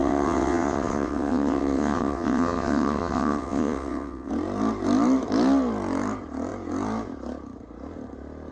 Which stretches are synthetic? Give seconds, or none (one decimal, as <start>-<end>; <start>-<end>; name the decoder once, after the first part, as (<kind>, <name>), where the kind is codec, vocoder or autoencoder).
0.0-4.3 (vocoder, WaveNeXt)